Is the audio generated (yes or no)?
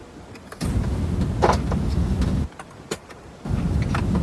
no